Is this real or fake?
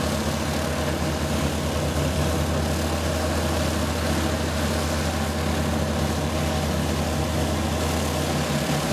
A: real